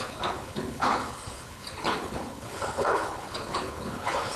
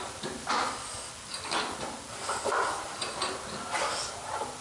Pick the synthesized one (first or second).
first